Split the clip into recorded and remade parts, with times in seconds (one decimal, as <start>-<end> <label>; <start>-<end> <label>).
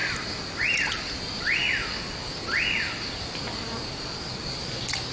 0.0-5.1 recorded